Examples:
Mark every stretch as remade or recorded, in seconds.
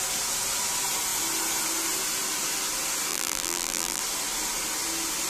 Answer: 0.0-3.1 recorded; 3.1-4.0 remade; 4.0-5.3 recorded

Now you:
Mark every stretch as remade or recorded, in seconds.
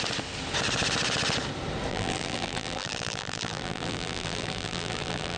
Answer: 0.0-1.9 recorded; 1.9-5.4 remade